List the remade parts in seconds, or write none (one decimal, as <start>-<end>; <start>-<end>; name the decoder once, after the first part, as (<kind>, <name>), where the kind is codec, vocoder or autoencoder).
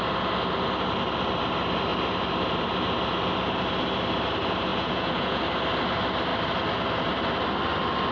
4.7-5.4 (vocoder, Vocos)